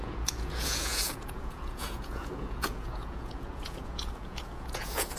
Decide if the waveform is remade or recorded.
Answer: remade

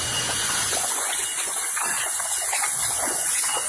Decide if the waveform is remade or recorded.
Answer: remade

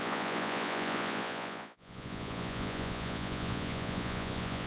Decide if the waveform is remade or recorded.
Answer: remade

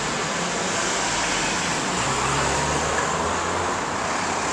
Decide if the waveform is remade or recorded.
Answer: recorded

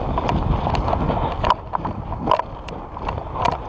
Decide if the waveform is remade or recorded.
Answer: recorded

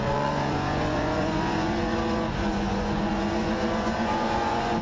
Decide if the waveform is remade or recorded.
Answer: remade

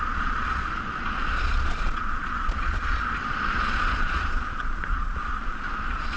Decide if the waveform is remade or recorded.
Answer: remade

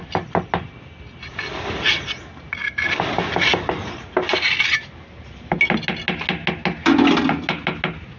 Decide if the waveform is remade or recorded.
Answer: recorded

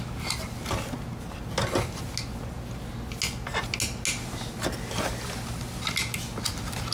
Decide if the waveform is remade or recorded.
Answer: recorded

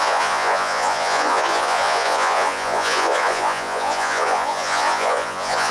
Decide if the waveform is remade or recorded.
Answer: remade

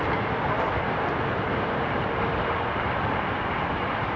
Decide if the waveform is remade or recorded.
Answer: recorded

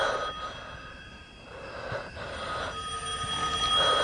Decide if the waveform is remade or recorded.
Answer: recorded